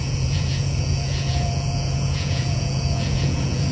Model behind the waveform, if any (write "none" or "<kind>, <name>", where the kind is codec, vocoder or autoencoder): vocoder, Vocos